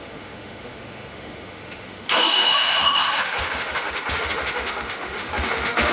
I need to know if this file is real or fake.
fake